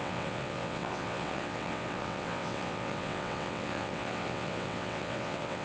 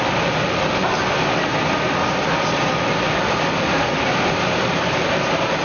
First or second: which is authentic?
second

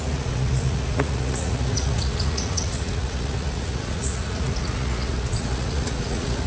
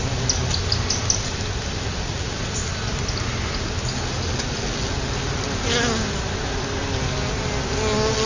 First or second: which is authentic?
second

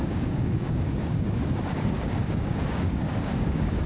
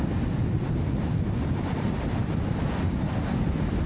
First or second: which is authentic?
second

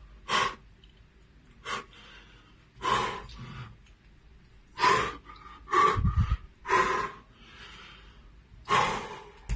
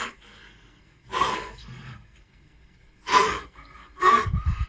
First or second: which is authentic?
first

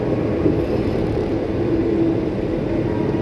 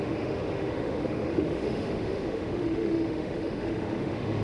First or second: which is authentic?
first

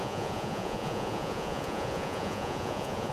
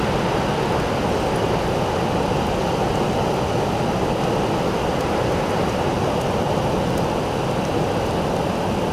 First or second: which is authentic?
second